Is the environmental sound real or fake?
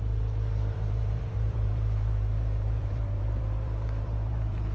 fake